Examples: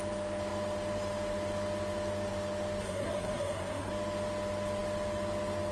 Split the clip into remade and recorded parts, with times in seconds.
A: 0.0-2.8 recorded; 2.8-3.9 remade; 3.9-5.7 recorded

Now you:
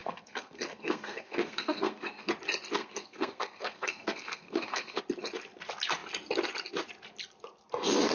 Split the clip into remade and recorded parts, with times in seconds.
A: 0.0-2.3 remade; 2.3-2.8 recorded; 2.8-5.0 remade; 5.0-8.1 recorded

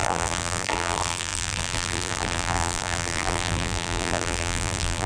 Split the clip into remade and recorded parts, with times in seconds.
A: 0.0-5.1 remade